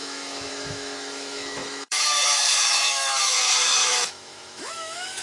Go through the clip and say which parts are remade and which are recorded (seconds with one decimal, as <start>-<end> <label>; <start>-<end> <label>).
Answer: 0.0-5.2 remade